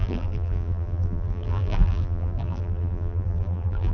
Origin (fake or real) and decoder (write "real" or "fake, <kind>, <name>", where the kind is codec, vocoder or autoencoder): fake, vocoder, BigVGAN v2